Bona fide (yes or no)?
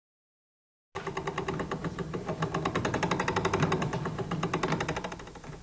yes